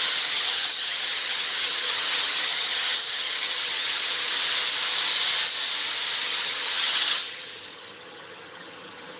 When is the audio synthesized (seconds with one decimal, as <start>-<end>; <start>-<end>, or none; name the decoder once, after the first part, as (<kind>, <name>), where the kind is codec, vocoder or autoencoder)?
0.0-4.3 (vocoder, HiFi-GAN); 6.2-9.2